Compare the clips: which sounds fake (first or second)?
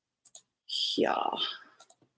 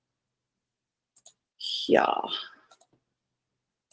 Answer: first